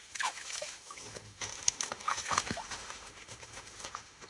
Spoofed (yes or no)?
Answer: yes